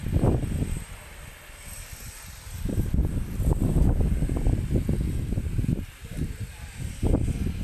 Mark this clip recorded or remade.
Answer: recorded